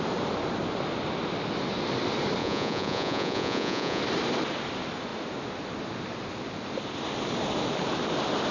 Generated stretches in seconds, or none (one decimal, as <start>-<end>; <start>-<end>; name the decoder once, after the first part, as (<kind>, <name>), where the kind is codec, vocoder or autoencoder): 2.4-4.0 (vocoder, Vocos)